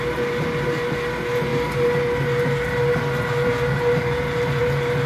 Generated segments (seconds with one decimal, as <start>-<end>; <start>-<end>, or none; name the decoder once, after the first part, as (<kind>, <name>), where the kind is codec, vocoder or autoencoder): none